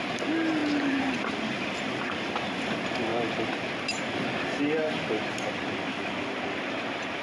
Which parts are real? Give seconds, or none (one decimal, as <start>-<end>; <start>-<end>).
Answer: 0.0-0.6; 1.3-7.2